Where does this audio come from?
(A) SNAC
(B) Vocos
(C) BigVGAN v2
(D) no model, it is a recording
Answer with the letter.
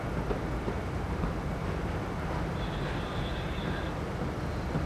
D